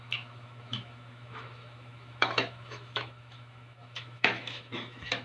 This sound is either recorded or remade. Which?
remade